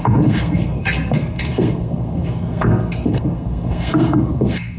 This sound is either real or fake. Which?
fake